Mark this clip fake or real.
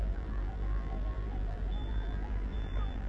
fake